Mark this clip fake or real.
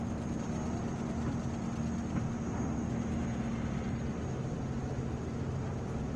real